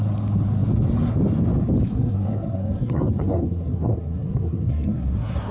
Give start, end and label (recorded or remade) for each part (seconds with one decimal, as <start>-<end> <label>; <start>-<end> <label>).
0.0-1.9 recorded; 1.9-5.5 remade